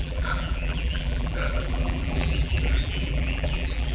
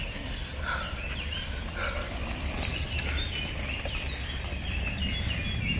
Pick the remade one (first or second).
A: first